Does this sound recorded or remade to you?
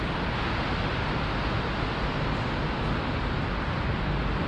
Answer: recorded